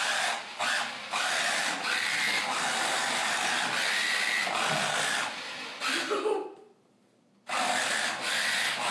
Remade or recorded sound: recorded